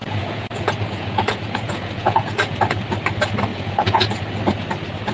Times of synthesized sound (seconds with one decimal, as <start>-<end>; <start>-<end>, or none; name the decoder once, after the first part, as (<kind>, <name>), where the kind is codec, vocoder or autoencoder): 0.0-2.6 (vocoder, Vocos); 3.5-4.4